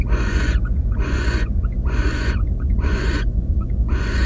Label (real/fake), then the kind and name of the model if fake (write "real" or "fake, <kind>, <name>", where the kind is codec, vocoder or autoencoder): fake, vocoder, Vocos